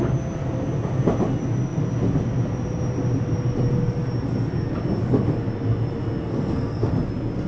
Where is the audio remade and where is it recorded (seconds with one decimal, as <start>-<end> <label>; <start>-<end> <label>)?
0.0-6.3 recorded; 6.3-6.9 remade; 6.9-7.5 recorded